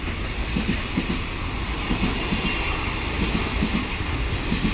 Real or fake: real